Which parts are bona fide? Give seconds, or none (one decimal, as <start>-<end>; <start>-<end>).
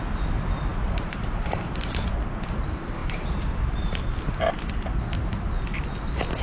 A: 0.0-0.7; 2.0-3.0; 3.9-6.4